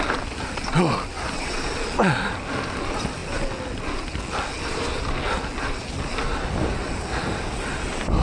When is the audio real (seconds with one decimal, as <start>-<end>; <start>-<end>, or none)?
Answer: 0.0-8.2

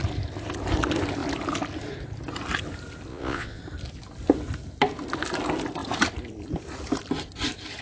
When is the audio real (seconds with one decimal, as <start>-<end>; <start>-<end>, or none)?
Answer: 0.0-3.1; 3.6-7.8

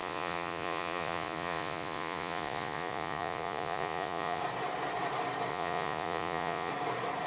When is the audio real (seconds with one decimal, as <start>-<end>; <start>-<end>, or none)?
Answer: 4.4-5.5; 6.7-7.3

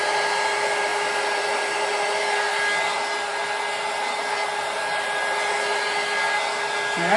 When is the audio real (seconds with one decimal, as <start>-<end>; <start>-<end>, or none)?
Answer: 0.0-7.2

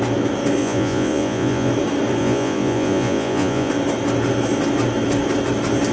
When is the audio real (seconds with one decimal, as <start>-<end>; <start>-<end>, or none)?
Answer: 0.0-0.6; 1.7-2.2; 3.7-5.9

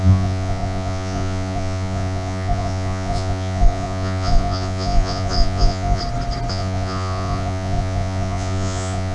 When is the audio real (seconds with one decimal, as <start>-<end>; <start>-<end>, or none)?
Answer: 6.0-6.5